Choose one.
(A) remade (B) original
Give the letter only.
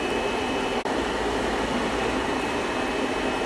B